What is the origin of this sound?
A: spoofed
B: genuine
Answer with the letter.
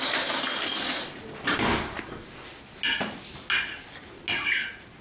B